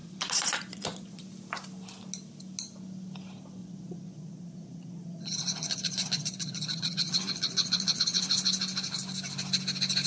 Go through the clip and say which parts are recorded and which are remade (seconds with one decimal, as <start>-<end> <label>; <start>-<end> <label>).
0.0-1.2 remade; 1.2-3.6 recorded; 3.6-8.0 remade; 8.0-10.1 recorded